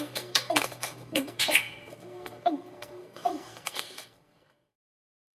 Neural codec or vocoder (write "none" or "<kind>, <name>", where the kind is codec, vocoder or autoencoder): codec, SNAC